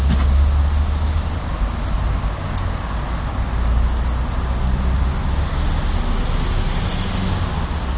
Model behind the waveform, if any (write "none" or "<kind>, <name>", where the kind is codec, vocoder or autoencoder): none